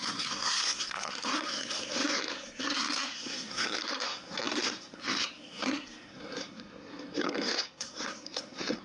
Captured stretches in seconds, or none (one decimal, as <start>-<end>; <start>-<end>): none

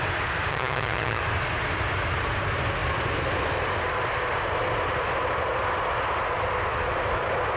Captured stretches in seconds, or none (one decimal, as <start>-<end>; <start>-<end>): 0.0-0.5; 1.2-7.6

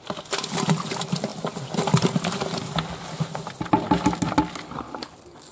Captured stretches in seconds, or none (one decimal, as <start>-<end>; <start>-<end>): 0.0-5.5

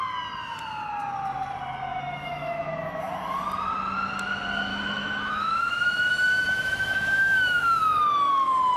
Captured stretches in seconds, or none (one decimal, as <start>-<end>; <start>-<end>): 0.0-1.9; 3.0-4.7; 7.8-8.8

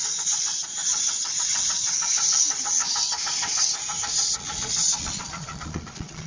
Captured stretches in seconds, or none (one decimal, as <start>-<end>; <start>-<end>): 0.8-4.3

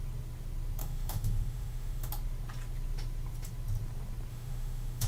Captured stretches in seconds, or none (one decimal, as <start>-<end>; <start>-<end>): 0.0-0.8; 2.1-4.3